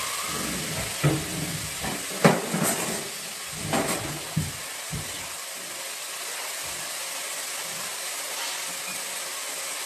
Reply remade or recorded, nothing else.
recorded